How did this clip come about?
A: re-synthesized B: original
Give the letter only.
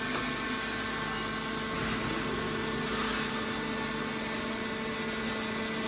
B